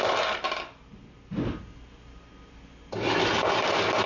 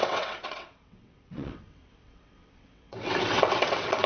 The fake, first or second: second